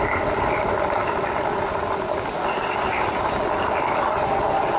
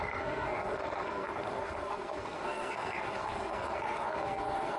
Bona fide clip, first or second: first